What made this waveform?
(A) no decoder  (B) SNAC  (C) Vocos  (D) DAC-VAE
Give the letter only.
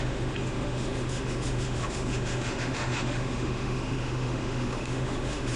D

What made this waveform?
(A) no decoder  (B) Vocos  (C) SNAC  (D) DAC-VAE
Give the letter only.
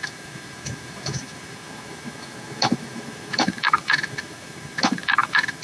D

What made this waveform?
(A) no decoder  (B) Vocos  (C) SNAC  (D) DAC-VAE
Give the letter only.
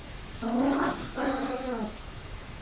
D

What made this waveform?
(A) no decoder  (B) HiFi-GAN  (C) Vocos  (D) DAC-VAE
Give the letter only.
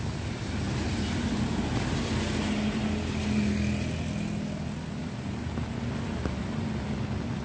A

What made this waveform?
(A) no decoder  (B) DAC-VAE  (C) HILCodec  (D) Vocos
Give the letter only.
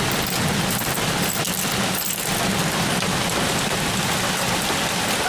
A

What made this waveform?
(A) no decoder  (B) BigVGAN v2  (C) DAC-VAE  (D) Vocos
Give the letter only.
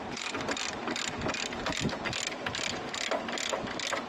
A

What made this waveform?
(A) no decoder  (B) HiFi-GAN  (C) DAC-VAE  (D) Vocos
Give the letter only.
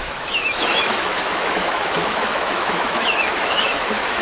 C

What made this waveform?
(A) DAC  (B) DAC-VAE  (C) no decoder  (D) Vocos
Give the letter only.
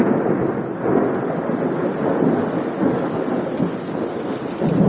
C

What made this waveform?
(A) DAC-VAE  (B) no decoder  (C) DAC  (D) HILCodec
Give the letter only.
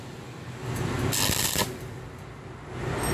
B